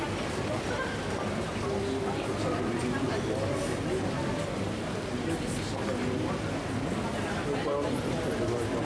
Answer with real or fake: real